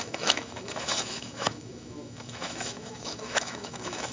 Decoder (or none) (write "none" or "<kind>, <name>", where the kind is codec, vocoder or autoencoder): autoencoder, DAC-VAE